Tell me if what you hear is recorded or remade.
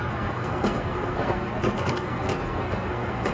remade